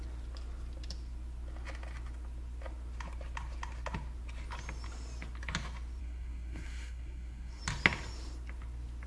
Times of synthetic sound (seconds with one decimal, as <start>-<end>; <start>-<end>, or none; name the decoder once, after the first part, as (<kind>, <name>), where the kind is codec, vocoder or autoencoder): 6.0-7.6 (codec, SNAC)

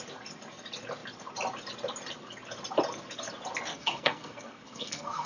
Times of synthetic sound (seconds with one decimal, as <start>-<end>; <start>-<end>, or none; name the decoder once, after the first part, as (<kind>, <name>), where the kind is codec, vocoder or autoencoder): 3.7-5.3 (codec, SNAC)

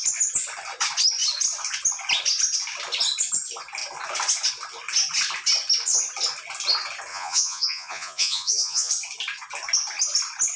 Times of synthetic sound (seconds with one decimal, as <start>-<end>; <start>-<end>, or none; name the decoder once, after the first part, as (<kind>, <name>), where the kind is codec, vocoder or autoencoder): 7.1-8.9 (vocoder, Vocos)

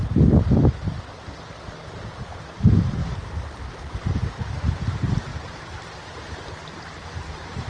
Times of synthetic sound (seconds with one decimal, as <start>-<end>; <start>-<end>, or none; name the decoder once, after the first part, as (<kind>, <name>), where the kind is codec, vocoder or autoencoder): 2.6-3.0 (vocoder, BigVGAN v2); 4.8-7.7

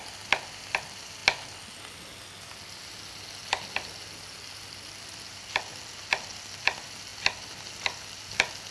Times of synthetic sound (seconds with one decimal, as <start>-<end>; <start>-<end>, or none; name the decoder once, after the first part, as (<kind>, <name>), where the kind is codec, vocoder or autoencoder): none

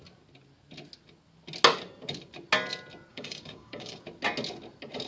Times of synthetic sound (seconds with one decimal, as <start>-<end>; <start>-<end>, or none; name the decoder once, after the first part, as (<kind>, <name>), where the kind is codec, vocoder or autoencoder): 3.1-4.0 (codec, DAC)

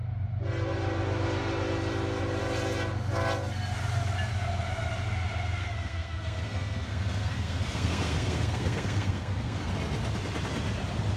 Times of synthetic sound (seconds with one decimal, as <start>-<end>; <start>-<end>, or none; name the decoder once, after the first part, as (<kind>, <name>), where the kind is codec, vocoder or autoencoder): 5.6-9.7 (codec, SNAC)

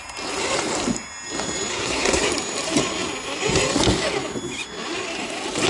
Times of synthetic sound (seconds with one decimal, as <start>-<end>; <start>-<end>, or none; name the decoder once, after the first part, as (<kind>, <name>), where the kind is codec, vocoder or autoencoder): 1.7-2.2 (codec, SNAC)